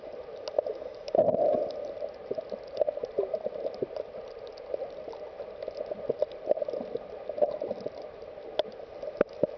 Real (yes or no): yes